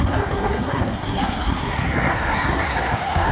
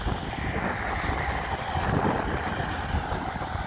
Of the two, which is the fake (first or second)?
first